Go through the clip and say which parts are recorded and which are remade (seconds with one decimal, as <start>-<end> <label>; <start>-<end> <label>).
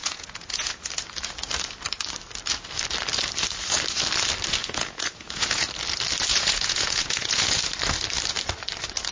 0.0-0.9 remade; 0.9-4.6 recorded; 4.6-5.7 remade; 5.7-6.3 recorded; 6.3-7.6 remade; 7.6-9.1 recorded